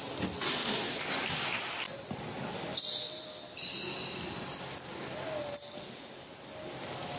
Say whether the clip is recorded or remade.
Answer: recorded